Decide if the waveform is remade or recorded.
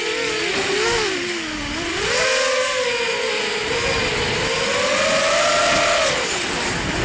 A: recorded